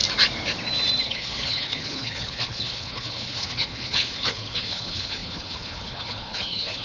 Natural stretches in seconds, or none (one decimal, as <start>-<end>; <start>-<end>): 0.0-1.0

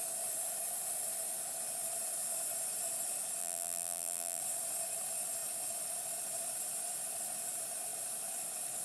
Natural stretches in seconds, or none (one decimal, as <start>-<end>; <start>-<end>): 0.0-3.4; 4.4-8.8

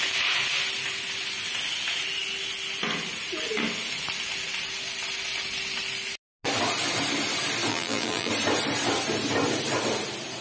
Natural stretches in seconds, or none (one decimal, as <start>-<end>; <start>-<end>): 0.0-7.7; 8.3-10.4